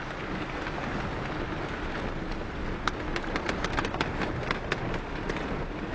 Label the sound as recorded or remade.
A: recorded